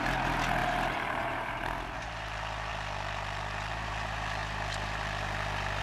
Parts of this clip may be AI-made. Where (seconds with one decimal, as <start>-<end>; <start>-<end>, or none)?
0.6-1.5; 4.4-5.8